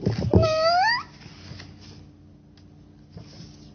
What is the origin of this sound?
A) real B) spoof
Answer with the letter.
A